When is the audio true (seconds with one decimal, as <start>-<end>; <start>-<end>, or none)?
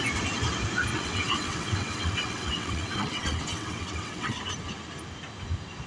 0.0-0.9; 4.4-5.9